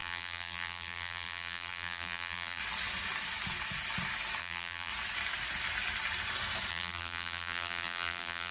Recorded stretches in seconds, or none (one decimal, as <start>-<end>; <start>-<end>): 2.6-4.4; 4.9-6.7